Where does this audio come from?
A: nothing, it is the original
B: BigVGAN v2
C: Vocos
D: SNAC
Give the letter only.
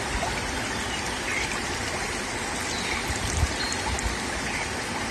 A